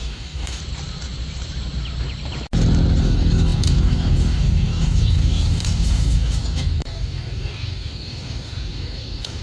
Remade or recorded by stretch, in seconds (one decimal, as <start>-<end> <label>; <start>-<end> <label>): 0.0-0.6 remade; 0.6-3.0 recorded; 3.0-9.4 remade